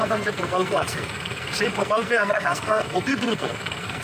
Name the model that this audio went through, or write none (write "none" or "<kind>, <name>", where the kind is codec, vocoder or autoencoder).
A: codec, SNAC